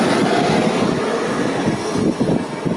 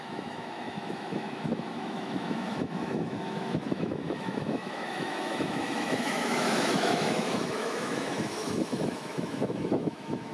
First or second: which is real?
first